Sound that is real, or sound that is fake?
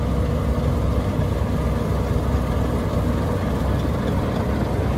real